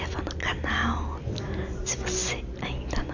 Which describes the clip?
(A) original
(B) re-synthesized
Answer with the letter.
A